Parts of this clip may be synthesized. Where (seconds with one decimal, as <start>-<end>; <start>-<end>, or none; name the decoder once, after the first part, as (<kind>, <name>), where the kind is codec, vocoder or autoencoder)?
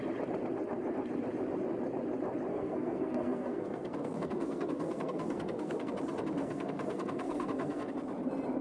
2.5-5.9 (codec, SNAC); 6.4-7.9